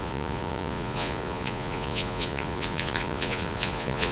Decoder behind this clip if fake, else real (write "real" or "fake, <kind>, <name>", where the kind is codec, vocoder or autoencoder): fake, vocoder, Vocos